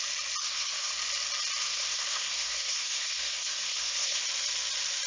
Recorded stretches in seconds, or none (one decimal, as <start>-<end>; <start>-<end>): 0.0-0.4; 0.9-1.6; 4.2-5.1